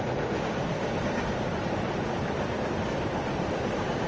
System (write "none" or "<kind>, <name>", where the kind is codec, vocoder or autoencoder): vocoder, BigVGAN v2